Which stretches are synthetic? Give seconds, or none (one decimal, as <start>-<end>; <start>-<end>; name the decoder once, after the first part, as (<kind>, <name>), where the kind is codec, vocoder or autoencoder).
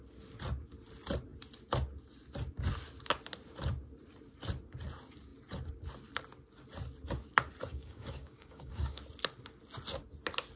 7.7-9.0 (codec, DAC)